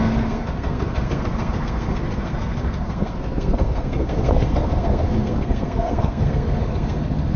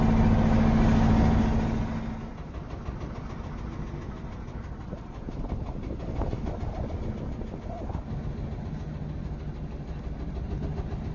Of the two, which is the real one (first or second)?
second